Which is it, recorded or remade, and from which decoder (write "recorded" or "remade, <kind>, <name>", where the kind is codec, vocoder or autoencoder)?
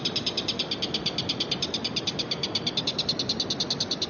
recorded